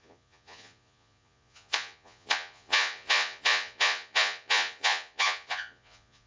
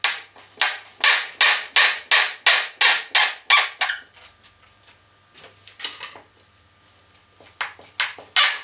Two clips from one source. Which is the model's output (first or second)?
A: first